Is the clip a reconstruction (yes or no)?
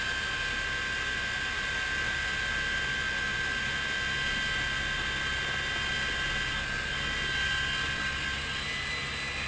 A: no